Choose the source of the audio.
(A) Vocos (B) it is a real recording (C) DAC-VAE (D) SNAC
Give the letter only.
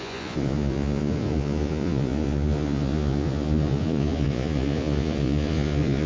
A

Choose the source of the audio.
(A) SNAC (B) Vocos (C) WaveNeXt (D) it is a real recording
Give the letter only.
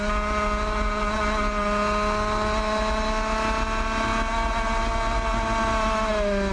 D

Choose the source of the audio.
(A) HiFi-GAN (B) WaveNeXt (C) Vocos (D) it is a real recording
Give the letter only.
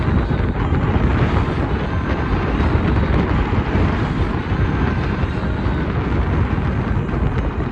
D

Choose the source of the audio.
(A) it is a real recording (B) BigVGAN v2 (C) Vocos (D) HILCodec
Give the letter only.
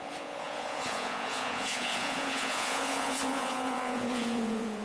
C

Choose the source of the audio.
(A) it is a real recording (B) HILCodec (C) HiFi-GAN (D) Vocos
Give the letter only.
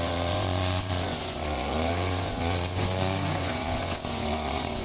D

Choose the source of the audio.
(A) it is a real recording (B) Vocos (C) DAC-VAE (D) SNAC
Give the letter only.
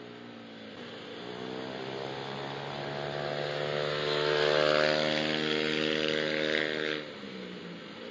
A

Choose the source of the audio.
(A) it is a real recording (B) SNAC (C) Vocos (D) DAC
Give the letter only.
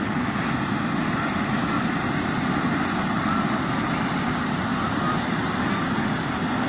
A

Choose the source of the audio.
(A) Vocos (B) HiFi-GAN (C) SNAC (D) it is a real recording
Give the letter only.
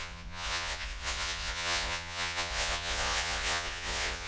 A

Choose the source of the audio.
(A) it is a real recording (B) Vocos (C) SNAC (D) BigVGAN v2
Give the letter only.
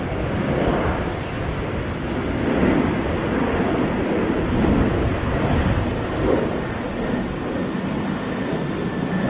A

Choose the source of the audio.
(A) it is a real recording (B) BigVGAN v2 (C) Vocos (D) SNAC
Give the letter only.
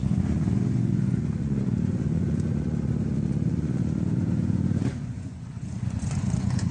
C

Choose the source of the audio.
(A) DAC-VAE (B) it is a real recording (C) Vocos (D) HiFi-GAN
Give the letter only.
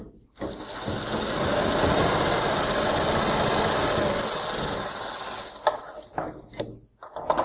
B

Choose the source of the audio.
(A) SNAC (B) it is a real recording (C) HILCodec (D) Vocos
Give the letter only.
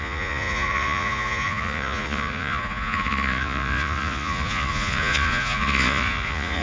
D